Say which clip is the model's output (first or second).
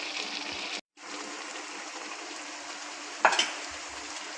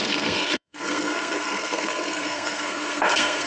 second